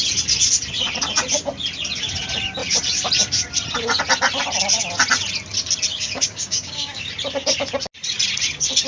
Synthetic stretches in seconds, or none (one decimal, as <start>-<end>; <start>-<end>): 5.9-7.1